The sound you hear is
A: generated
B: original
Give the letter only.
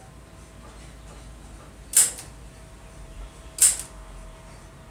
B